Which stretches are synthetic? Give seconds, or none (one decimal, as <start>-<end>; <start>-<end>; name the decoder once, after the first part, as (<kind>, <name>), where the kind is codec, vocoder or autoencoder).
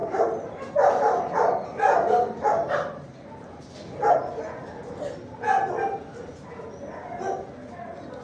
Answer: 0.0-0.7 (vocoder, BigVGAN v2); 1.7-3.6